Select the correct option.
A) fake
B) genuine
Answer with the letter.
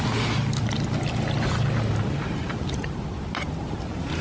B